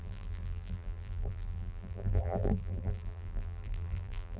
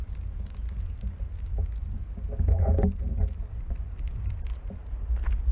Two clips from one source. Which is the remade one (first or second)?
first